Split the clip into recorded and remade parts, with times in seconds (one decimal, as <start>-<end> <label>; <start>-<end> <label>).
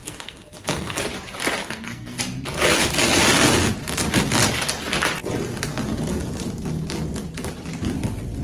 0.0-1.0 remade; 1.0-1.6 recorded; 1.6-2.2 remade; 2.2-8.4 recorded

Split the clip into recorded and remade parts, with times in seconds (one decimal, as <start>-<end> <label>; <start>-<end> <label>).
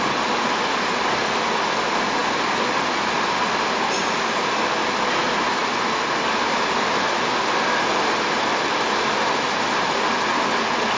0.0-11.0 recorded